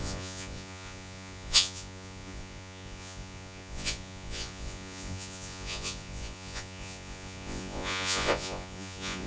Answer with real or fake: fake